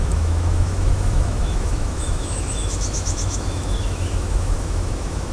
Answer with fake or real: fake